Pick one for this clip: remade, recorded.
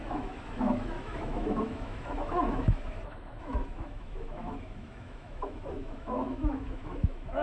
remade